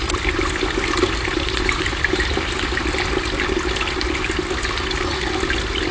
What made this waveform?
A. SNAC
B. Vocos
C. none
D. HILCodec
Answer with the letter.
C